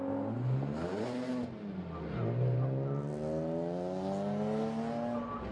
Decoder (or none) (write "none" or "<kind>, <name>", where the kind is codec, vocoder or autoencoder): none